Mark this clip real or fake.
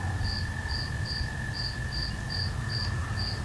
real